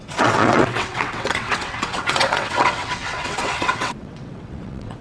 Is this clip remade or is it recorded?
remade